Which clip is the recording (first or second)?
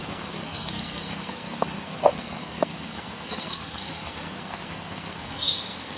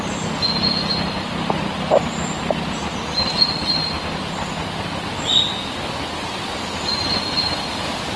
second